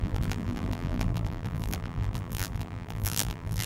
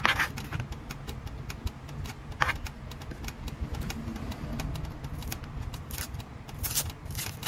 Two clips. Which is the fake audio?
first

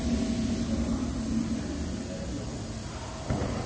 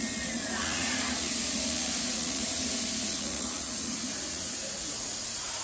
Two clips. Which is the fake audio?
second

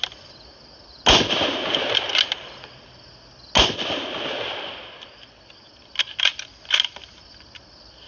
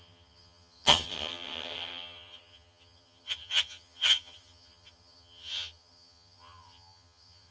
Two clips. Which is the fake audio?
second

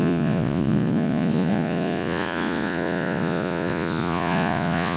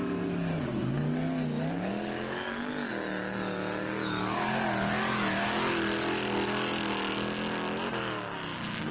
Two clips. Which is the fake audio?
first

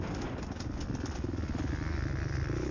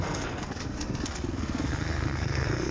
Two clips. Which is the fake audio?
second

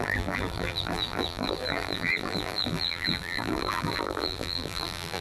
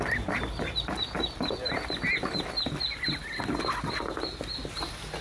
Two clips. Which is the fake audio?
first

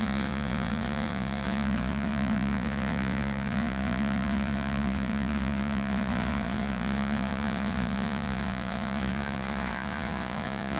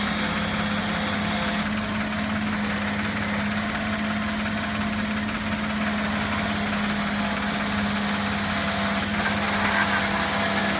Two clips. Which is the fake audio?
first